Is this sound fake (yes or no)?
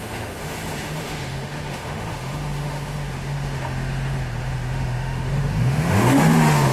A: yes